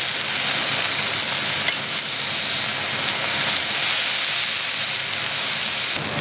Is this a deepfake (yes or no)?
no